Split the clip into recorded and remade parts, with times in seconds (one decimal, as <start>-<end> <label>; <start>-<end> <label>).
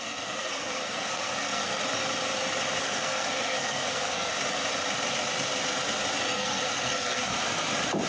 0.0-1.8 remade; 1.8-2.8 recorded; 2.8-4.3 remade; 4.3-6.3 recorded; 6.3-7.3 remade; 7.3-8.1 recorded